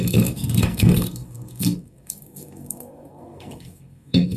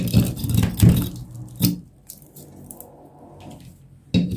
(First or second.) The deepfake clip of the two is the first